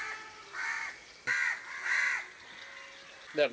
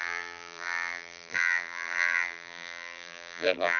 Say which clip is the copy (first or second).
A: second